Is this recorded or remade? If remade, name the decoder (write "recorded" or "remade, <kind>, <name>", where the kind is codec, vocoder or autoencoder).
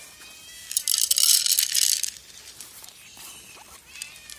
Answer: remade, vocoder, BigVGAN v2